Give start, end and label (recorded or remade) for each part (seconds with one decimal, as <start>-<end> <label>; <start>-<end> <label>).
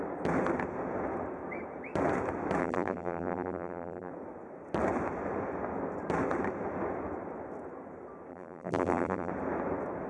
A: 0.0-2.6 recorded; 2.6-4.1 remade; 4.1-8.3 recorded; 8.3-9.3 remade; 9.3-10.1 recorded